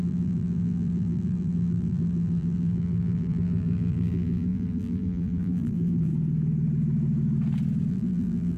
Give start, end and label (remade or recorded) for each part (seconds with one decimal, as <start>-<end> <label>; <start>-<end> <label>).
0.0-6.1 remade; 6.1-7.9 recorded; 7.9-8.6 remade